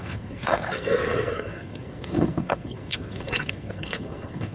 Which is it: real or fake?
fake